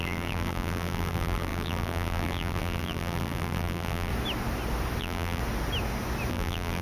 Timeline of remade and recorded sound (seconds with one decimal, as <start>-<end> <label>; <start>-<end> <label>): 0.0-4.1 remade; 4.1-5.0 recorded; 5.0-5.4 remade; 5.4-6.3 recorded; 6.3-6.8 remade